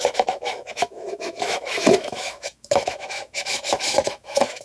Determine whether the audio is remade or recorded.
remade